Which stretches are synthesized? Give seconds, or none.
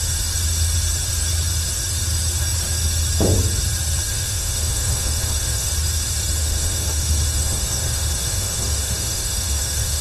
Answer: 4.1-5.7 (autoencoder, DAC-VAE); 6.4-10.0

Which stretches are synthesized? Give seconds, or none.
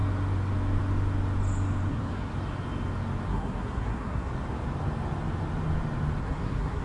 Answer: 1.9-2.3 (codec, SNAC); 3.3-4.3; 6.2-6.8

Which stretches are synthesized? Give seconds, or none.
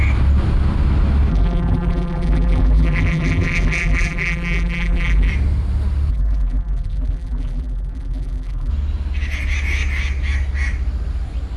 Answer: 1.3-5.3 (vocoder, BigVGAN v2); 6.1-8.7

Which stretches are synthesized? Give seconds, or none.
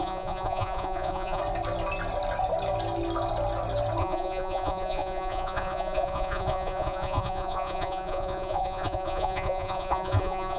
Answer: 0.0-1.4 (vocoder, Vocos); 4.0-10.6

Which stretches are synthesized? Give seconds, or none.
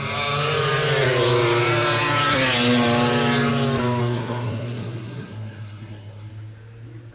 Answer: 4.0-6.3 (codec, SNAC)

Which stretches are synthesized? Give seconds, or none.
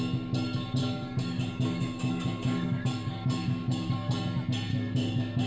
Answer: 0.8-4.1 (codec, DAC); 4.7-5.5